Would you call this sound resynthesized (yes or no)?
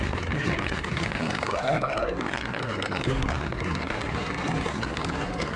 yes